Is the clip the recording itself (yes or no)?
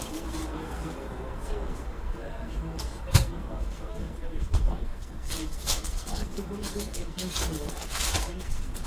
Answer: no